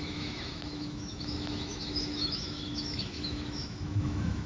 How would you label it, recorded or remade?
remade